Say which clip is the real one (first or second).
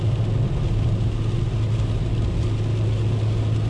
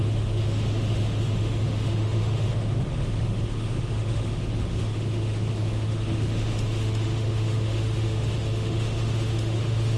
first